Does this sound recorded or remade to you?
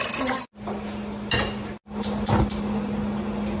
recorded